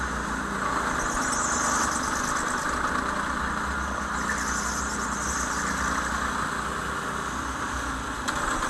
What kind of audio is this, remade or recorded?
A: recorded